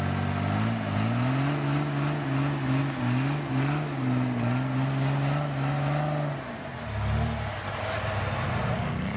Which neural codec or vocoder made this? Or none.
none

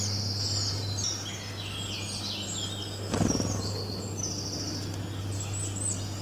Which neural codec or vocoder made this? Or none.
none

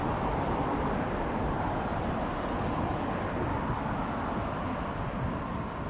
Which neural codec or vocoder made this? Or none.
none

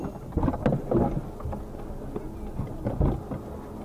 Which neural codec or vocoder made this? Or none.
none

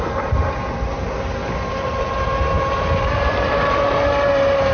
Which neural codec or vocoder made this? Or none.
none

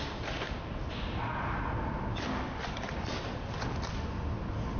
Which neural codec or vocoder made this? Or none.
none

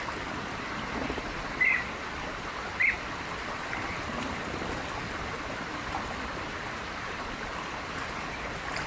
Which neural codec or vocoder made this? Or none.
vocoder, BigVGAN v2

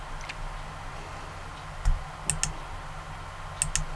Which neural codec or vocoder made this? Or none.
none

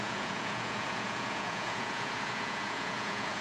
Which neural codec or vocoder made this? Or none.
vocoder, Vocos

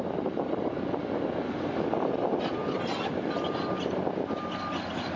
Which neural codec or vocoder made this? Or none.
none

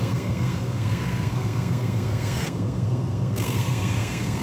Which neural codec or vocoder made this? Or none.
codec, SNAC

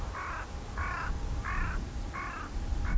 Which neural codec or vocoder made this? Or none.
none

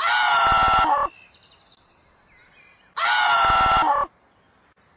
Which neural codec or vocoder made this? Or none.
none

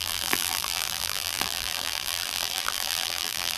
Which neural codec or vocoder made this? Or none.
vocoder, BigVGAN v2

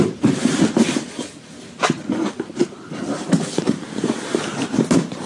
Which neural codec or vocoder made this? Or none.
vocoder, BigVGAN v2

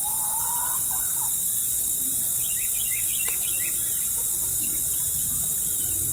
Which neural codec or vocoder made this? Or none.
none